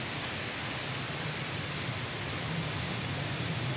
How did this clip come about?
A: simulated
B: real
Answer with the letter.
B